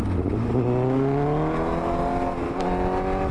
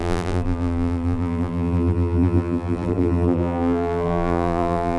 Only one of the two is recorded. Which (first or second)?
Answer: first